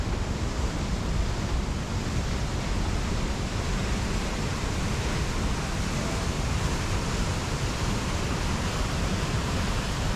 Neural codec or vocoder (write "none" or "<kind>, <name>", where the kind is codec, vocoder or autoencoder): vocoder, BigVGAN v2